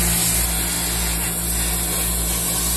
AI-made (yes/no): no